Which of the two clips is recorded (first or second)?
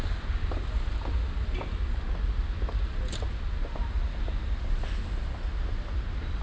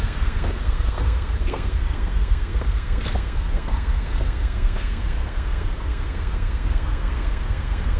first